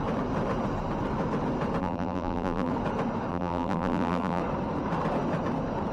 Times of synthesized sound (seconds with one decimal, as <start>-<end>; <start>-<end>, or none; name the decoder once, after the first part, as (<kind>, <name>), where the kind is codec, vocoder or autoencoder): 1.8-2.7 (vocoder, BigVGAN v2); 3.3-4.4